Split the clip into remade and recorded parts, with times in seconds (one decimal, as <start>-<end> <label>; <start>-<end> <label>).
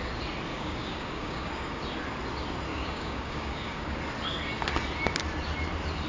0.0-0.5 recorded; 0.5-1.8 remade; 1.8-2.7 recorded; 2.7-4.0 remade; 4.0-6.1 recorded